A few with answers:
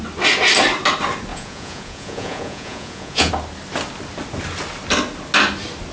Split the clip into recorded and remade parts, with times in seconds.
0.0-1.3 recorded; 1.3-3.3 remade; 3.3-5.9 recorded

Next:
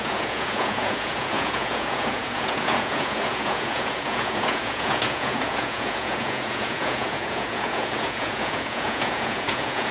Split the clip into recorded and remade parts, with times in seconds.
0.0-9.9 remade

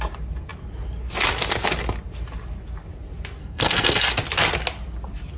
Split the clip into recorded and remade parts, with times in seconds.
0.0-3.4 recorded; 3.4-4.1 remade; 4.1-5.4 recorded

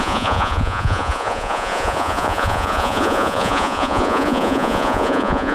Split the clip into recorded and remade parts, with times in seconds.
0.0-5.5 remade

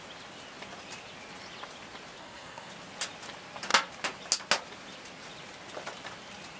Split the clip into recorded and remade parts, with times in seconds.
0.0-2.2 recorded; 2.2-2.7 remade; 2.7-6.6 recorded

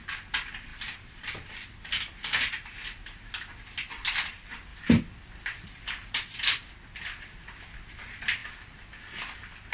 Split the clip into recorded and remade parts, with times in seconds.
0.0-0.7 recorded; 0.7-3.3 remade; 3.3-4.7 recorded; 4.7-6.7 remade; 6.7-9.7 recorded

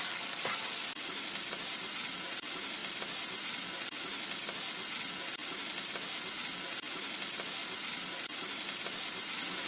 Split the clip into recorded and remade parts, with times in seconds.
0.0-9.7 recorded

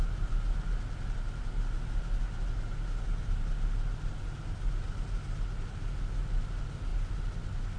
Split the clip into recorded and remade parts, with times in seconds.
0.0-7.8 recorded